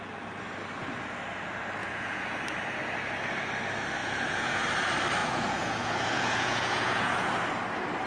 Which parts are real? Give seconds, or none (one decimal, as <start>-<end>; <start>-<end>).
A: 0.0-1.8; 2.4-4.0; 4.6-5.2; 7.3-8.1